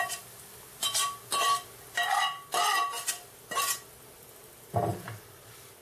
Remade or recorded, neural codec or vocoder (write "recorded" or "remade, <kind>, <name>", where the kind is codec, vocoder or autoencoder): recorded